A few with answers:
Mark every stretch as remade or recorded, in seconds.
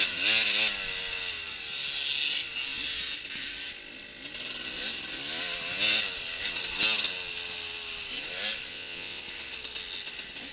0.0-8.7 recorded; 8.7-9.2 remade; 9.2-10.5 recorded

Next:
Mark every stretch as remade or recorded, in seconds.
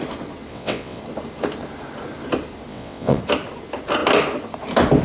0.0-0.5 recorded; 0.5-1.0 remade; 1.0-2.7 recorded; 2.7-3.2 remade; 3.2-5.0 recorded